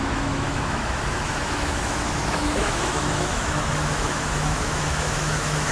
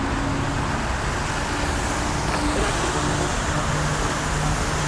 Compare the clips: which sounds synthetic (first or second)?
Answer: first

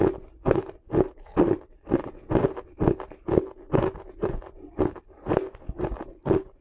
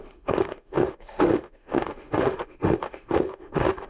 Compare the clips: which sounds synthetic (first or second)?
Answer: second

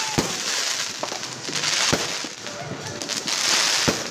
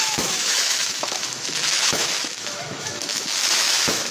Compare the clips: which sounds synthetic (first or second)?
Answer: second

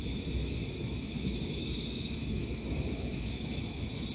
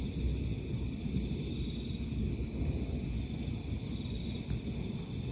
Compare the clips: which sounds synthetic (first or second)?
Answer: first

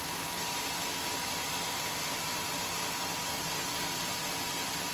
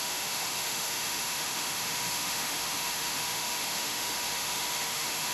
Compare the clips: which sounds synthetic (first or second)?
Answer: second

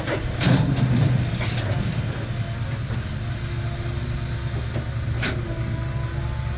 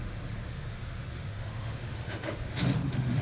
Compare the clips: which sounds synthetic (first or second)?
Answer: second